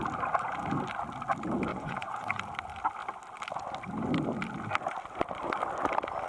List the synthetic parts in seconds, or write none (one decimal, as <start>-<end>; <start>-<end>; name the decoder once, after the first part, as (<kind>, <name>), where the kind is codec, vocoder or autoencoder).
1.7-2.4 (vocoder, Vocos)